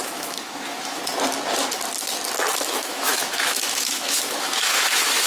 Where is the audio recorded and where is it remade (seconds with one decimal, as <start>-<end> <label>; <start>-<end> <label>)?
0.0-1.0 remade; 1.0-2.7 recorded; 2.7-5.3 remade